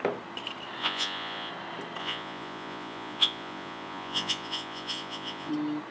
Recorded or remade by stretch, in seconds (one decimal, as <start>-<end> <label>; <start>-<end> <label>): 0.0-0.8 recorded; 0.8-1.5 remade; 1.5-2.0 recorded; 2.0-5.5 remade; 5.5-5.9 recorded